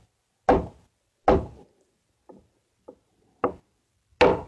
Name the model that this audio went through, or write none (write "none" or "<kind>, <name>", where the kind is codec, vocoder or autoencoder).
none